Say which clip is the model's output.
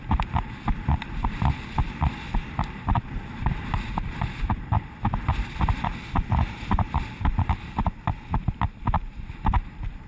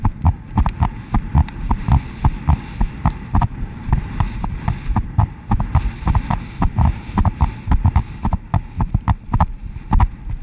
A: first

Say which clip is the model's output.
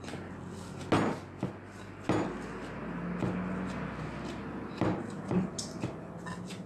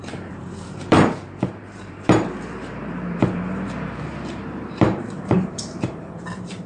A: second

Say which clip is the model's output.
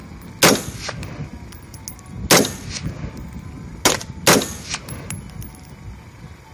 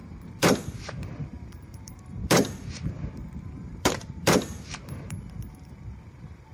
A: second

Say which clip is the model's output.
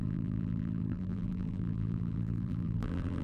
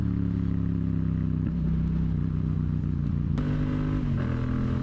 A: first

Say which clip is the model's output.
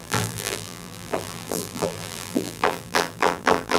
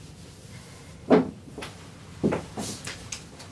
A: first